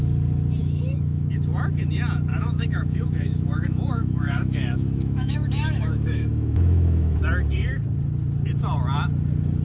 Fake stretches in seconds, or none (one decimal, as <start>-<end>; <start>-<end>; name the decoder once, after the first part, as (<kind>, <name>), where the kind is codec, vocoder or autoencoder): 0.6-1.3 (autoencoder, DAC-VAE); 2.3-7.2